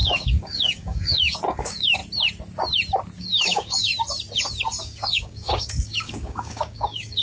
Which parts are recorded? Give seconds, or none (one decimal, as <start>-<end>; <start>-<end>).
2.0-3.2; 3.9-4.8